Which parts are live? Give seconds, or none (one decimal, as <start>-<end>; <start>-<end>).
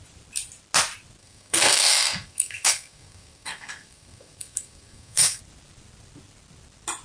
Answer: 0.0-1.2; 5.4-7.0